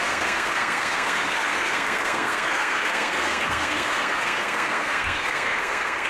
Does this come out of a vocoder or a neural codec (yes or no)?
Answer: yes